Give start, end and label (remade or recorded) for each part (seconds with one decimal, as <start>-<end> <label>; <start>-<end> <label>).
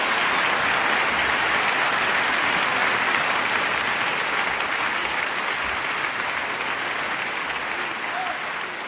0.0-8.9 recorded